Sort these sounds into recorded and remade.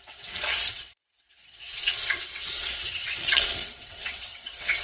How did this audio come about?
remade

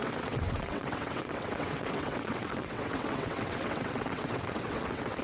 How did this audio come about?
remade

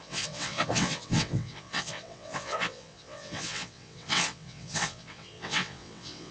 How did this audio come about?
remade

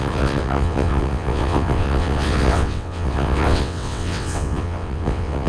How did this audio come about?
remade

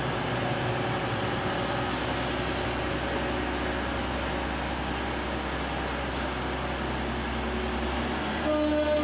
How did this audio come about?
recorded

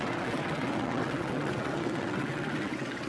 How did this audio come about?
remade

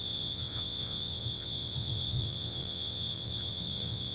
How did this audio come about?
remade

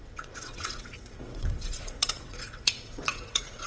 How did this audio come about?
remade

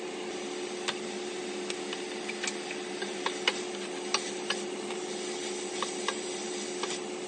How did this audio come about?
recorded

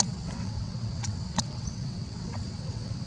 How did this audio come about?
remade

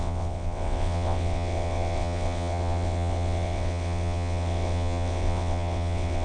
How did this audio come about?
remade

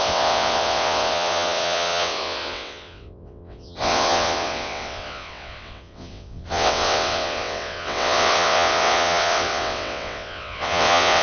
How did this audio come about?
remade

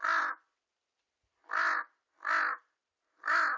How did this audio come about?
recorded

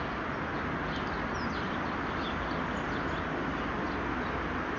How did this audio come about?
recorded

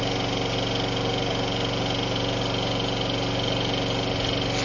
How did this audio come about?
recorded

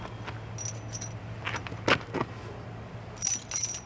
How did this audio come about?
recorded